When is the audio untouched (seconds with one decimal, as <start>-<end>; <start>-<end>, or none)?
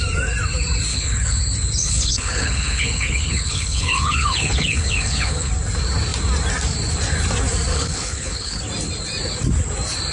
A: 0.0-0.9; 1.4-1.8; 5.5-7.7; 8.6-10.1